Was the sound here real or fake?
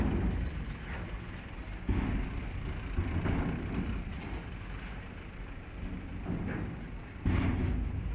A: real